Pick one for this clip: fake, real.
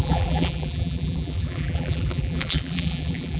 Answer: fake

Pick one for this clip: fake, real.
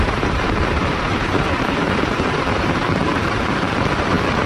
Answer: fake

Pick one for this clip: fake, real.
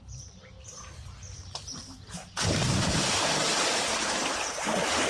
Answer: fake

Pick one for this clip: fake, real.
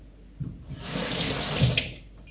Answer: real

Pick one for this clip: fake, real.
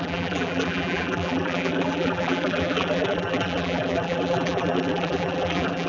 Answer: fake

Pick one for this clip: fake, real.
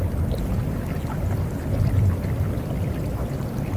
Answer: real